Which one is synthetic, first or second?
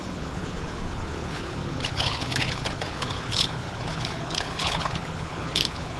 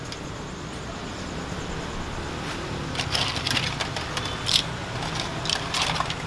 first